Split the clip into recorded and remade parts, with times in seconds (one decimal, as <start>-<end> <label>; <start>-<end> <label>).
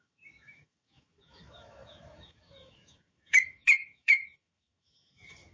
0.0-5.5 remade